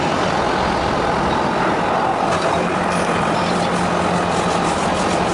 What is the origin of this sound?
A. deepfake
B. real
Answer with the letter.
B